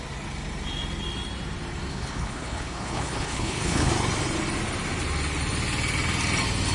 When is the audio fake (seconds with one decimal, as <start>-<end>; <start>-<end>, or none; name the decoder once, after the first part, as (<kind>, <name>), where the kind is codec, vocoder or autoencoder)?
1.9-3.9 (codec, HILCodec)